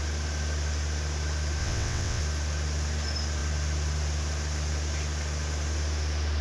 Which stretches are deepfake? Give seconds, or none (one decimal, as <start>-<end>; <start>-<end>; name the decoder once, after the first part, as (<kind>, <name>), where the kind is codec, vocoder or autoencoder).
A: 1.6-2.2 (vocoder, WaveNeXt)